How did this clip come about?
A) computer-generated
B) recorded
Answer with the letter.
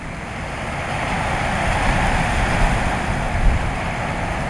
B